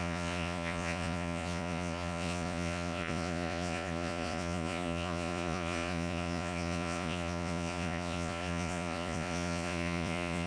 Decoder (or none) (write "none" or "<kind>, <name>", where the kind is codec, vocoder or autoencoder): vocoder, Vocos